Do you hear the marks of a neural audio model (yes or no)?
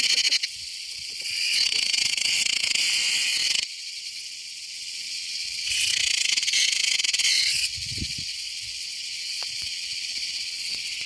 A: yes